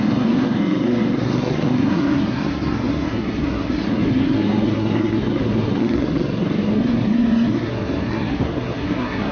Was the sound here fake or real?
fake